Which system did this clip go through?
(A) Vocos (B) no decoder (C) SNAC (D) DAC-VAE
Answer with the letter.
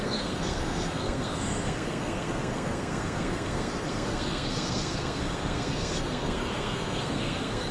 C